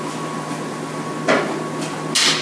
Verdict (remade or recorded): recorded